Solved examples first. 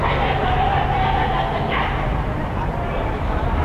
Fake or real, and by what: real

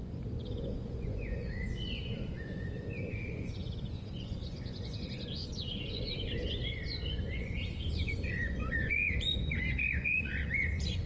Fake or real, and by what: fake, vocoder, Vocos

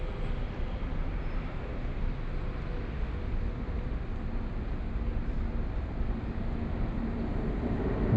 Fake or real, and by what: real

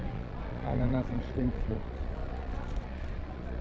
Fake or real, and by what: fake, vocoder, Vocos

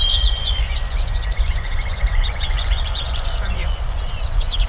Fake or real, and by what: fake, vocoder, Vocos